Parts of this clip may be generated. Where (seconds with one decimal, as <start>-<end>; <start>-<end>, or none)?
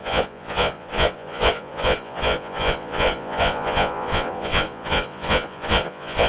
0.0-6.3